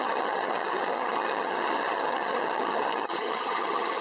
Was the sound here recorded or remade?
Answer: remade